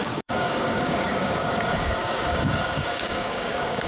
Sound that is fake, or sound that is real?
fake